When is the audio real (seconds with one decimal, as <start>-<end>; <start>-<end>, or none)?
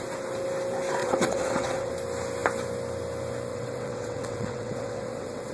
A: 0.0-1.0; 1.9-3.5